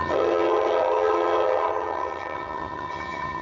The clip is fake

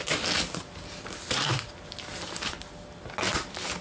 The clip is real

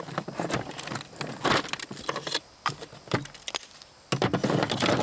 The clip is real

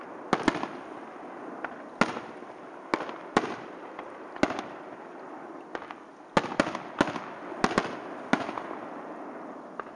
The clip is real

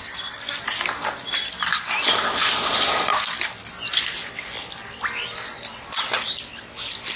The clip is real